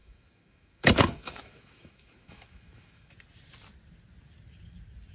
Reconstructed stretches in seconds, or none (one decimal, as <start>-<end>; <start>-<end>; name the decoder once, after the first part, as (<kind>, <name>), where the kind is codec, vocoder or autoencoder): 0.0-3.1 (autoencoder, DAC-VAE)